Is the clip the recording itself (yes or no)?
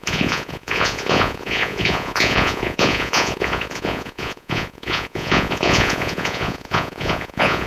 no